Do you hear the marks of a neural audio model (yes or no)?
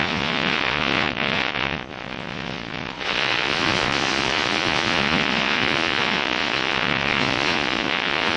yes